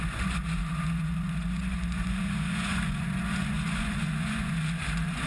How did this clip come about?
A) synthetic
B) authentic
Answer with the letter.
A